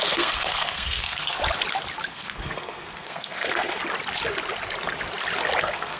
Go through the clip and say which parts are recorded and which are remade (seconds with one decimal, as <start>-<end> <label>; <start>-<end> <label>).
0.0-1.4 remade; 1.4-2.1 recorded; 2.1-3.8 remade; 3.8-5.6 recorded; 5.6-6.0 remade